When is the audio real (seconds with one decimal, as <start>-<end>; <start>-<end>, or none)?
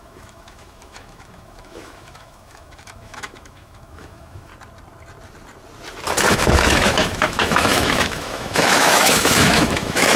4.5-6.3